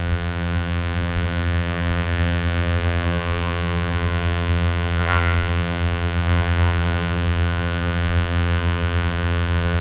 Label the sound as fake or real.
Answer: fake